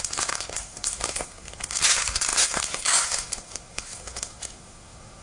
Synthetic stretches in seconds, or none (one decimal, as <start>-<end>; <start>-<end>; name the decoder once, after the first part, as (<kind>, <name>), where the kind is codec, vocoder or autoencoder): 0.0-5.2 (codec, SNAC)